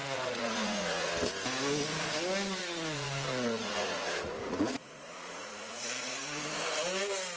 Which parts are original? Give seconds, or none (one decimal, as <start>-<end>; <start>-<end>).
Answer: 1.1-2.6; 6.2-7.4